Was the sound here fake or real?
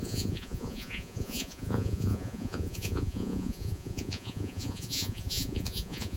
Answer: fake